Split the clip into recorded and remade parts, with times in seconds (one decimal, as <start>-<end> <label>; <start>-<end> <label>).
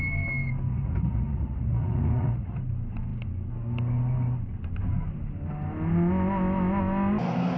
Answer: 0.0-0.7 recorded; 0.7-2.6 remade; 2.6-7.6 recorded